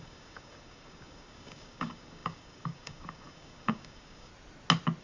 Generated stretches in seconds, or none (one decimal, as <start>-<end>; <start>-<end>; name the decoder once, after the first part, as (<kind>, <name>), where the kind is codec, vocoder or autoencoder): 0.0-4.3 (codec, DAC)